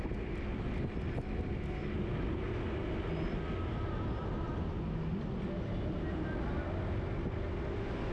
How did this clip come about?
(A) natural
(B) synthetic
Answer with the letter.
A